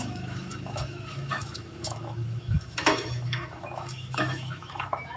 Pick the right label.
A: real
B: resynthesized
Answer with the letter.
B